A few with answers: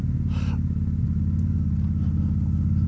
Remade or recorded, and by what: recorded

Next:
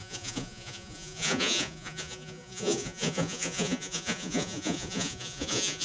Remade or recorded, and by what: remade, vocoder, Vocos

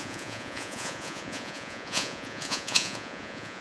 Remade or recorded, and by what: remade, vocoder, Vocos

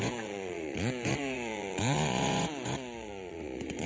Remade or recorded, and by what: remade, vocoder, Vocos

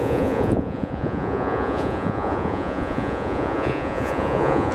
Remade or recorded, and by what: remade, vocoder, Vocos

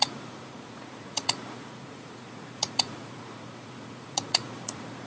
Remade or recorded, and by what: remade, vocoder, Vocos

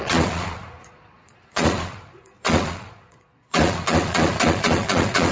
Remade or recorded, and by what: remade, vocoder, Vocos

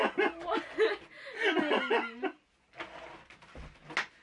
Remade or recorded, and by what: recorded